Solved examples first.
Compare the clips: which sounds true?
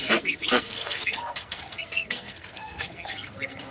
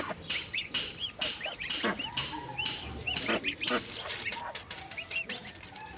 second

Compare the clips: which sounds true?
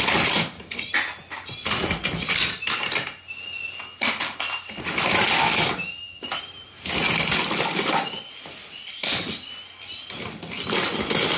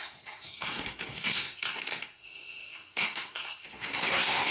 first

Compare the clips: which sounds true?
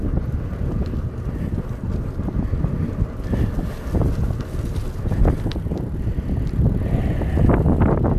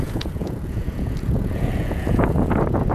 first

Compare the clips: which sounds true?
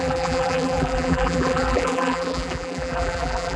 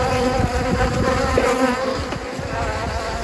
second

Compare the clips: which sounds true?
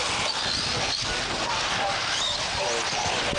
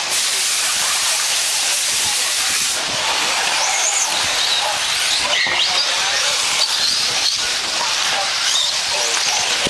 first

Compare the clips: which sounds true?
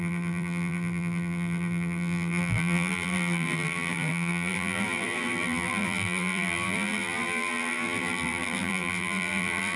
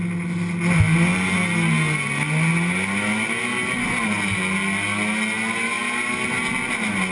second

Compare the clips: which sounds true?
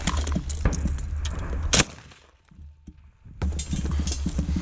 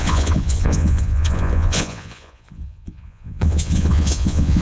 first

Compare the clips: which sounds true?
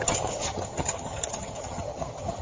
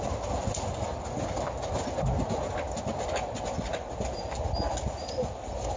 second